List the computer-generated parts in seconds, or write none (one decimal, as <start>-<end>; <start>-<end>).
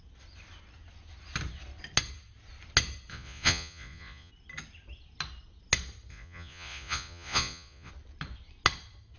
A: 3.1-4.3; 6.1-7.9